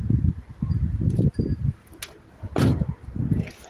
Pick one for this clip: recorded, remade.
recorded